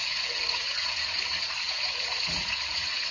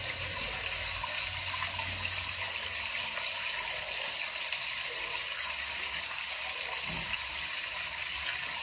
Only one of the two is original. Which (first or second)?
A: second